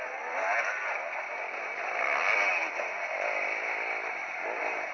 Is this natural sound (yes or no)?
yes